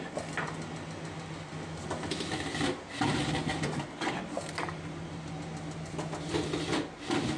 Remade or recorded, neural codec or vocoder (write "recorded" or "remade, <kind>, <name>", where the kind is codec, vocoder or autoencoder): recorded